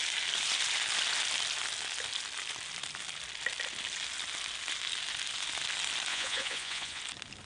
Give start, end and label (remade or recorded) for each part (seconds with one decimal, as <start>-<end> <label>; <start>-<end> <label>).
0.0-6.1 recorded; 6.1-7.0 remade; 7.0-7.5 recorded

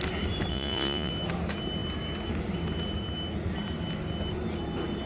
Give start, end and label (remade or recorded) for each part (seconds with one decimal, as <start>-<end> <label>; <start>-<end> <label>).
0.0-0.5 recorded; 0.5-1.1 remade; 1.1-5.1 recorded

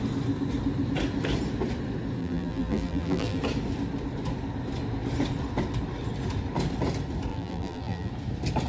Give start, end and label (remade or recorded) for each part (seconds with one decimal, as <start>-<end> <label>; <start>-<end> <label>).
0.0-2.2 recorded; 2.2-3.4 remade; 3.4-7.3 recorded; 7.3-8.1 remade; 8.1-8.7 recorded

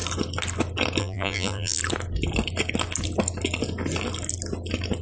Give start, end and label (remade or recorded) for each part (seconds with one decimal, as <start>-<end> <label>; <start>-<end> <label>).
0.0-1.0 recorded; 1.0-1.8 remade; 1.8-5.0 recorded

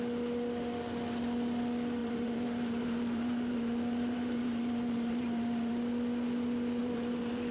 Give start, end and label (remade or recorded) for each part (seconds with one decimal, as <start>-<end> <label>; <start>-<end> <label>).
0.0-2.0 recorded; 2.0-5.7 remade; 5.7-6.8 recorded; 6.8-7.5 remade

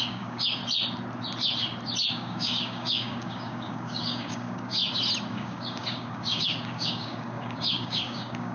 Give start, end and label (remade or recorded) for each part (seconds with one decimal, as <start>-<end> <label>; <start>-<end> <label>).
0.0-0.6 remade; 0.6-2.1 recorded; 2.1-4.8 remade; 4.8-5.3 recorded; 5.3-8.5 remade